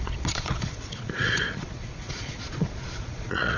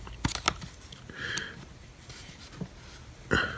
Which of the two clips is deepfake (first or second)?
first